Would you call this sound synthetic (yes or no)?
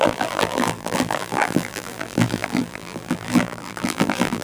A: yes